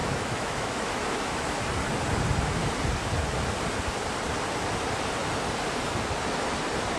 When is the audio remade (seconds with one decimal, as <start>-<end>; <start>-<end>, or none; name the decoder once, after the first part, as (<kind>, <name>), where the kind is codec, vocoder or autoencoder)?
0.0-1.6 (autoencoder, DAC-VAE)